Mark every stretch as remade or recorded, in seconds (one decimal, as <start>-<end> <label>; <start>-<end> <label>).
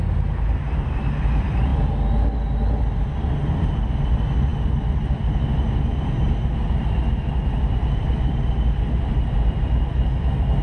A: 0.0-10.6 recorded